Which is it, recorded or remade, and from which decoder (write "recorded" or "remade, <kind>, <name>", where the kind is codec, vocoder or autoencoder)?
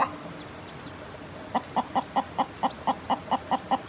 recorded